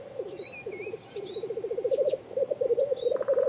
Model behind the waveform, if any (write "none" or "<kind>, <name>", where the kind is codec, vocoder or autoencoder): none